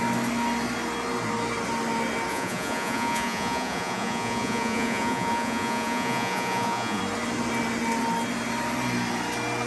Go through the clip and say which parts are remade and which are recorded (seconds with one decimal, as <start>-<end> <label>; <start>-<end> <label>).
0.0-2.3 recorded; 2.3-7.0 remade; 7.0-9.7 recorded